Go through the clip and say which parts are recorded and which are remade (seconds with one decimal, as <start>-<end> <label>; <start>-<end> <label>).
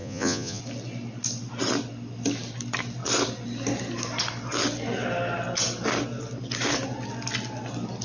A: 0.0-0.6 remade; 0.6-8.0 recorded